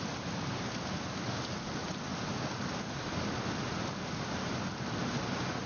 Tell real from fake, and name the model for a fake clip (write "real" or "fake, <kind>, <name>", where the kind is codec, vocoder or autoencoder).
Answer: real